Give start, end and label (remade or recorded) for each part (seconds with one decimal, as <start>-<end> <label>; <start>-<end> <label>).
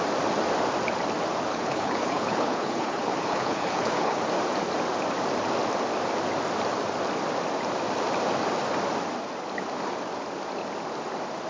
0.0-1.5 recorded; 1.5-4.2 remade; 4.2-11.5 recorded